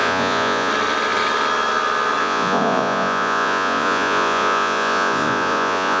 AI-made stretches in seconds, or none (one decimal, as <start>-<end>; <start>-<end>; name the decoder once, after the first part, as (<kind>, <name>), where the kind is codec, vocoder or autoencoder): 0.0-0.7 (vocoder, Vocos); 2.2-6.0